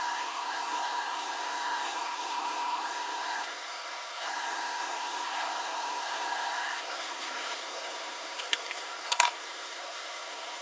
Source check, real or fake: fake